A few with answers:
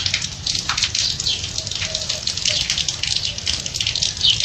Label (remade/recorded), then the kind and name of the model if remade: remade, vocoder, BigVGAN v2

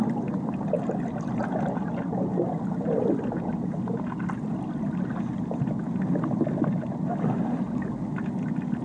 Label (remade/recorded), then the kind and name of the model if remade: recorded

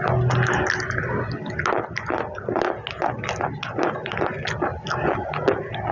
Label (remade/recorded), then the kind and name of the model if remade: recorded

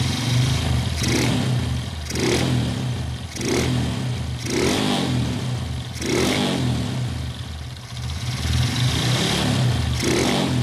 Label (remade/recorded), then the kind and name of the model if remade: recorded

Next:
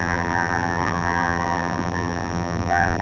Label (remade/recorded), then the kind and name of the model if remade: remade, vocoder, BigVGAN v2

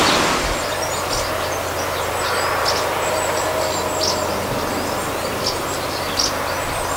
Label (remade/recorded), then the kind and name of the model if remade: recorded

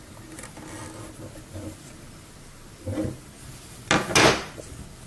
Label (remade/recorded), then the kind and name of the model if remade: recorded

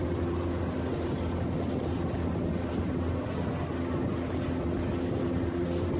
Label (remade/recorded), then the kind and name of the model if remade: recorded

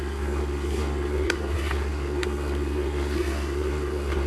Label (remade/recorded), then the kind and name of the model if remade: remade, codec, SNAC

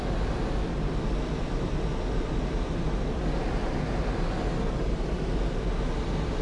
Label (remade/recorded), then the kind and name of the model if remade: recorded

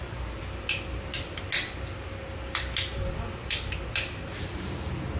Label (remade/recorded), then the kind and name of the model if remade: recorded